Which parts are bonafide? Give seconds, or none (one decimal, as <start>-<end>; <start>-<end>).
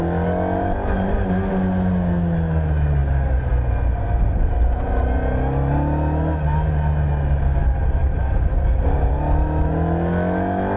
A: 0.0-7.6; 8.2-10.8